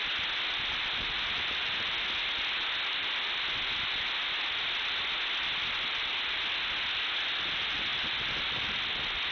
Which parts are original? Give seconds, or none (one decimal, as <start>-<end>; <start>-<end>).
0.0-9.3